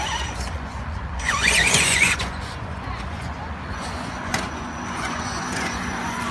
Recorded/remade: remade